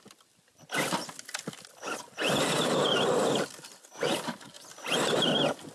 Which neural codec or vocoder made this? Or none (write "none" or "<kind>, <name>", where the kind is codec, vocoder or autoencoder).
none